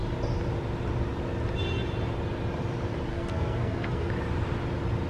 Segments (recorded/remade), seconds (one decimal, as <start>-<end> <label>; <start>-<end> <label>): 0.0-3.1 recorded; 3.1-4.1 remade; 4.1-5.1 recorded